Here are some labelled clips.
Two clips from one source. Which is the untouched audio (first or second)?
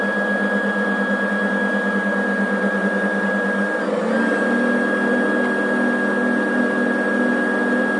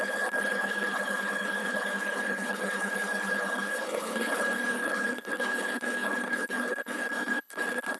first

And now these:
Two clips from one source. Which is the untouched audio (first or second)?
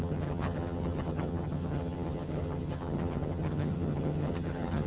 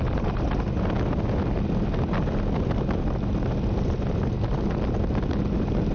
second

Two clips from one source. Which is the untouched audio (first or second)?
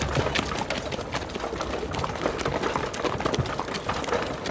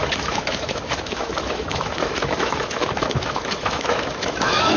first